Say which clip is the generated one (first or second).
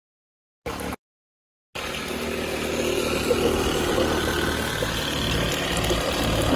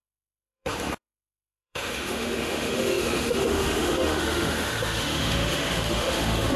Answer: second